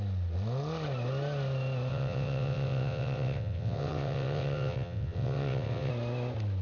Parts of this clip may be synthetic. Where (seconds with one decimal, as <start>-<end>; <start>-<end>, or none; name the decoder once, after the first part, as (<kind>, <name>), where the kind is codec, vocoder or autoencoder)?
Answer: 1.9-5.9 (vocoder, WaveNeXt)